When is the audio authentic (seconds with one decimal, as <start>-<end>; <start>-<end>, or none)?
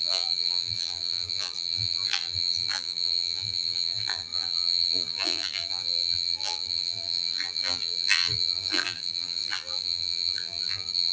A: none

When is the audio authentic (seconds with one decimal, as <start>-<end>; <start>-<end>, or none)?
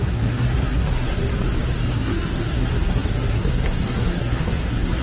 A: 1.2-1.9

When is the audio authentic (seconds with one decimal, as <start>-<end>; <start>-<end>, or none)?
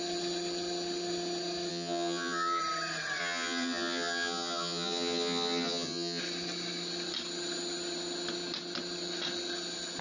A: 0.0-1.7; 2.6-3.2; 6.2-10.0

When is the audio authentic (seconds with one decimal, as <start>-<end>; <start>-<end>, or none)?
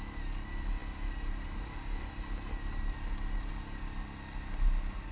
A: 0.0-5.1